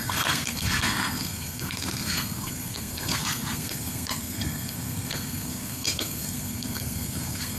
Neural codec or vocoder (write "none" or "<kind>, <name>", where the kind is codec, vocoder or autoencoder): codec, SNAC